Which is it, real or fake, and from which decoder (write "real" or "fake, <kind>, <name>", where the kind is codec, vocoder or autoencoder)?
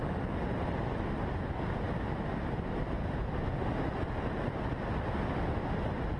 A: real